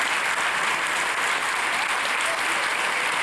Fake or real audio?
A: real